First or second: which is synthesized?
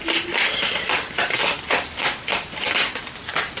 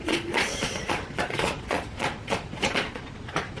second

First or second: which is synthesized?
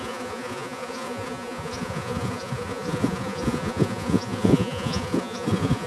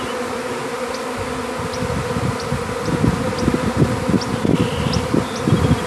first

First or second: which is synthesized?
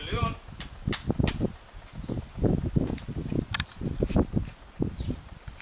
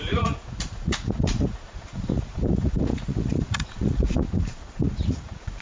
second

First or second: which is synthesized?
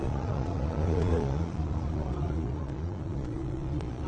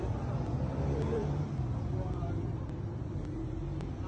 first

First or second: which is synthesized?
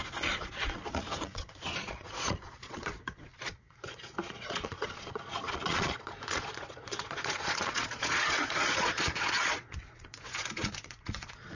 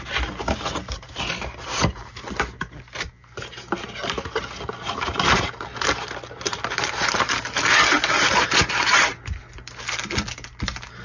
first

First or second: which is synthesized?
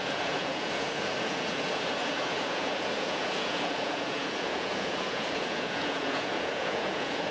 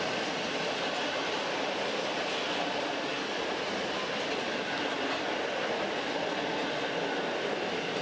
first